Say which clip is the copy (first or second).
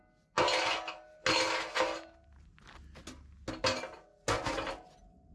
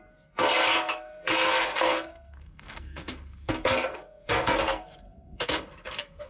second